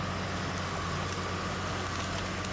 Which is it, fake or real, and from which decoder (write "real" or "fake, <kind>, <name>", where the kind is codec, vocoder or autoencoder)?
real